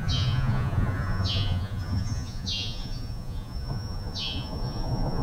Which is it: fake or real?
fake